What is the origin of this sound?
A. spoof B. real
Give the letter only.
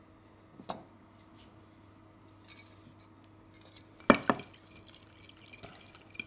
B